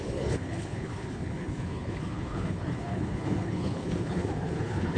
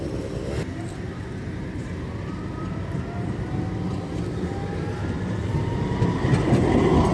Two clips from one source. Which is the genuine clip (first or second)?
second